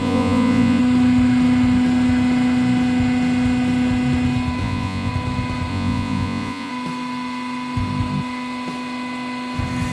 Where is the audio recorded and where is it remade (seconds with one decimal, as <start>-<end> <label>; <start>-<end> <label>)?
0.0-0.8 remade; 0.8-4.6 recorded; 4.6-5.1 remade; 5.1-5.7 recorded; 5.7-6.7 remade; 6.7-9.9 recorded